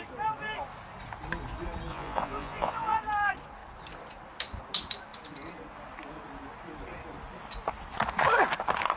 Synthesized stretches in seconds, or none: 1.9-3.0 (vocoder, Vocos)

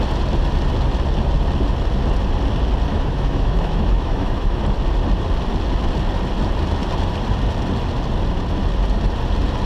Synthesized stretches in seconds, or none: 2.9-4.6 (autoencoder, DAC-VAE)

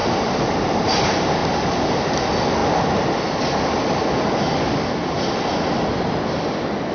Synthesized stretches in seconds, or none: 0.0-1.0 (vocoder, BigVGAN v2); 1.4-2.2